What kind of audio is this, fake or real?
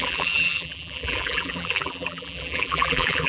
fake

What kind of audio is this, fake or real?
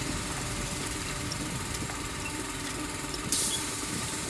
fake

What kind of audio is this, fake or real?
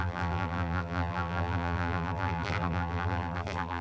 fake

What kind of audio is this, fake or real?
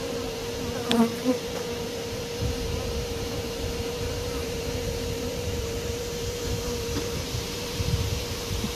fake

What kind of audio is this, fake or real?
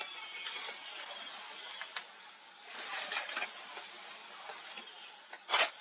real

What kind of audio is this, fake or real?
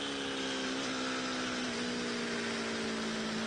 real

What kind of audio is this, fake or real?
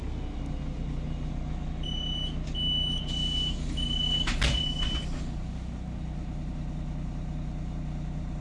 real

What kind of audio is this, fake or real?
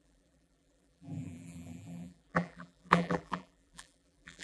fake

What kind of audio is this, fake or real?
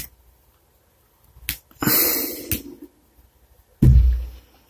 real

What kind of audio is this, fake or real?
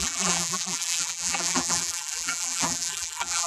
fake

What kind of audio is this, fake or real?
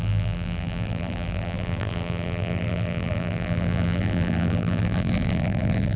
fake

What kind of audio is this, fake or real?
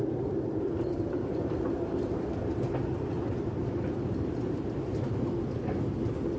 fake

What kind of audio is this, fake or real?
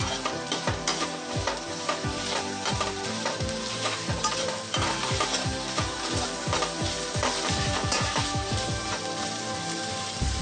fake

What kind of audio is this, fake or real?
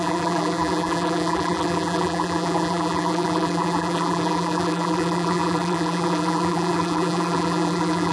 fake